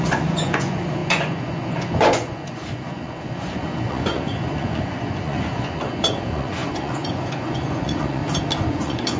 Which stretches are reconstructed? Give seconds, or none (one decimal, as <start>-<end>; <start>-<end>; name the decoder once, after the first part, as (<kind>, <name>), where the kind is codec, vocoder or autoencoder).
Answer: 0.0-8.2 (vocoder, Vocos); 8.7-9.2